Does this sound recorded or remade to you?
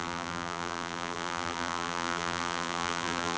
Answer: remade